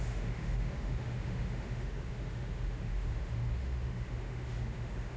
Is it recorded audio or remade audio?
remade